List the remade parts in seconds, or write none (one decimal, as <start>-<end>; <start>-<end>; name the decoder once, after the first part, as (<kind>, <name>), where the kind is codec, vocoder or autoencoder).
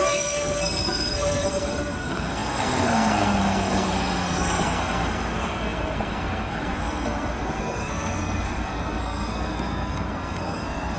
0.0-11.0 (codec, SNAC)